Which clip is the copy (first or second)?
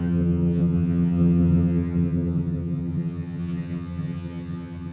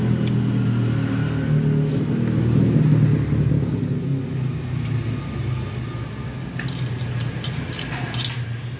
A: first